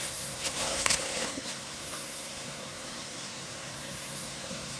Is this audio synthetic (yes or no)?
yes